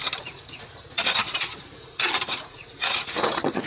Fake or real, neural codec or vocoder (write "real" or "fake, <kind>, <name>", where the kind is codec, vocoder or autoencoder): fake, vocoder, Vocos